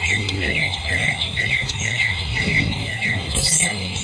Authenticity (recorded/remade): remade